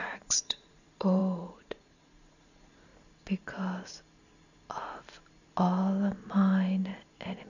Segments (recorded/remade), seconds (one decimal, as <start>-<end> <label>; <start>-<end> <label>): 0.0-2.9 remade; 2.9-7.5 recorded